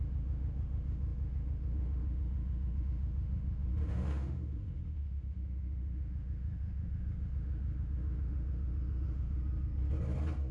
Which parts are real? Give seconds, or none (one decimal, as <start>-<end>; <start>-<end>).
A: 9.4-10.5